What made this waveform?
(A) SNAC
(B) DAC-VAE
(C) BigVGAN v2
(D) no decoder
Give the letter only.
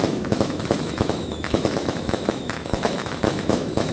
B